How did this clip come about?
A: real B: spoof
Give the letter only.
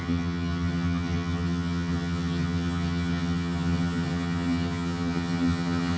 B